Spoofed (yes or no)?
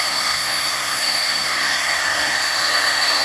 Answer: yes